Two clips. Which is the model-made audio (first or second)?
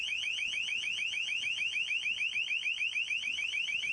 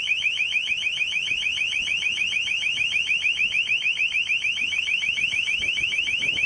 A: second